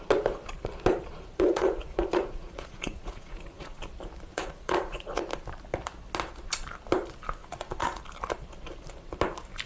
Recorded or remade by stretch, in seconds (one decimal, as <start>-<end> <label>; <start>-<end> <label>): 0.0-1.1 recorded; 1.1-3.8 remade; 3.8-4.3 recorded; 4.3-5.2 remade; 5.2-7.4 recorded; 7.4-8.0 remade; 8.0-9.7 recorded